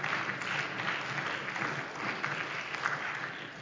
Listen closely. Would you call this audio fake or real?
real